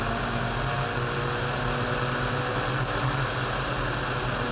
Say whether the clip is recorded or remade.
recorded